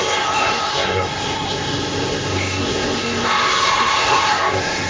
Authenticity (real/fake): fake